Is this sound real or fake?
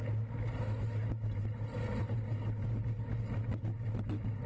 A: real